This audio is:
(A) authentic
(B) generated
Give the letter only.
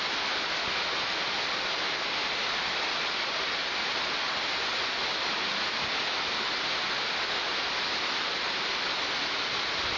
A